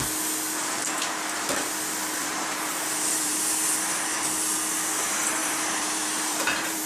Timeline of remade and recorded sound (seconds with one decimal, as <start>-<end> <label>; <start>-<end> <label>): 0.0-2.2 recorded; 2.2-3.4 remade; 3.4-5.4 recorded; 5.4-6.9 remade